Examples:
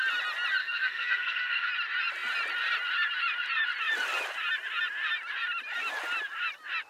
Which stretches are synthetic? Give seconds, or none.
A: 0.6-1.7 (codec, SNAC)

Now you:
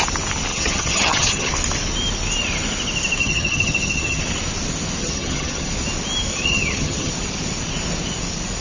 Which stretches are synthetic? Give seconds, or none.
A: 0.5-1.5 (vocoder, HiFi-GAN); 3.2-4.2; 5.0-5.7; 6.3-7.1

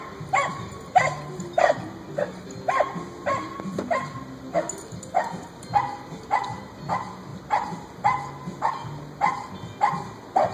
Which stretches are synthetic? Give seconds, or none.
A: none

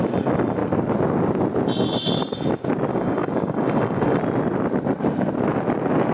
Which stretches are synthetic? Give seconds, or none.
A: 2.9-4.2 (codec, DAC)

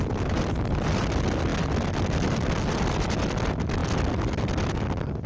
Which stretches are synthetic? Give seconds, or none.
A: none